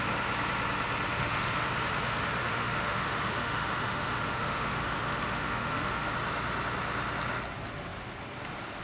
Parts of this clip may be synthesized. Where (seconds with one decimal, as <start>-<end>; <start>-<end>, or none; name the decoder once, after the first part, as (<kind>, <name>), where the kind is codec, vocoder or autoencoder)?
1.1-1.7 (autoencoder, DAC-VAE); 2.4-6.1